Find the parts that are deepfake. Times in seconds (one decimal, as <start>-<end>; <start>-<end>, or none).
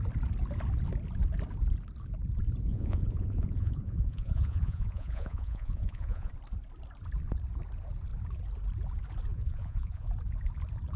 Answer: 2.7-6.3; 9.3-10.1